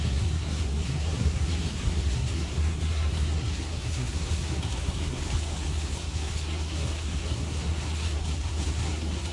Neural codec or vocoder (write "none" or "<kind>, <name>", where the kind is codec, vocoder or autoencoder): codec, SNAC